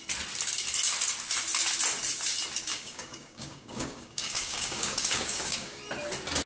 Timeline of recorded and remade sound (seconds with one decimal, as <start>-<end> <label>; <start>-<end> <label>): 0.0-2.7 recorded; 2.7-5.8 remade; 5.8-6.5 recorded